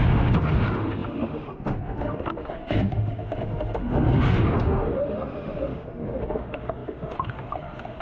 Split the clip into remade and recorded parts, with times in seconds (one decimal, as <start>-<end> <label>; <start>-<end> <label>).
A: 0.0-8.0 remade